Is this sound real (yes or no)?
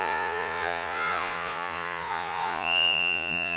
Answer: no